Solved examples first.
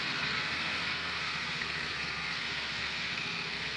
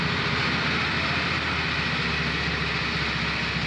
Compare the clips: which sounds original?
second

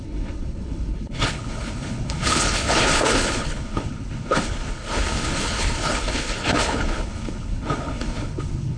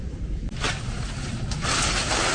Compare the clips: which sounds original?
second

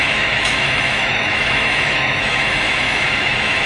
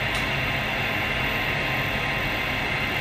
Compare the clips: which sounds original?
second